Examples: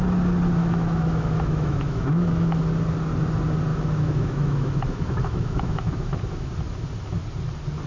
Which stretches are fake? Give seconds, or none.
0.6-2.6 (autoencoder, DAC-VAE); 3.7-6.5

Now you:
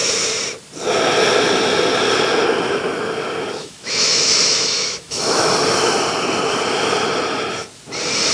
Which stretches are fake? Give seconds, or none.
3.6-5.5 (autoencoder, DAC-VAE)

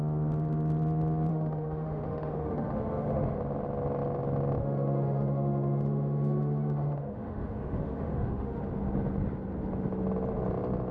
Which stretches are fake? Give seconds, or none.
1.3-3.4 (autoencoder, DAC-VAE); 4.6-8.6

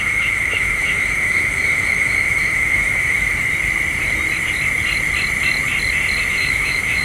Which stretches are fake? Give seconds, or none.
0.0-3.3 (autoencoder, DAC-VAE); 6.3-7.0

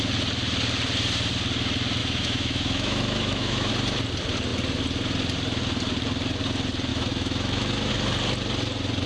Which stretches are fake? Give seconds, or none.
2.0-3.7 (autoencoder, DAC-VAE); 6.9-7.9

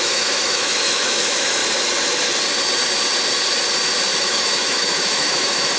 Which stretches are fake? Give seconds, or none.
0.0-1.6 (autoencoder, DAC-VAE); 4.2-5.8

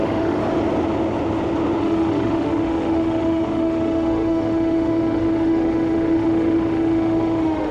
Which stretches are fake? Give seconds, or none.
0.0-0.4 (autoencoder, DAC-VAE); 1.8-7.7